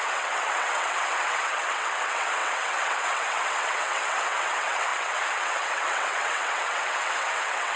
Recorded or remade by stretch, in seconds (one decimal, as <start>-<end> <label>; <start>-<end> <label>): 0.0-7.8 remade